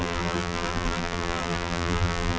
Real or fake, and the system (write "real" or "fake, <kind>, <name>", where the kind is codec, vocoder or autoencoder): fake, vocoder, BigVGAN v2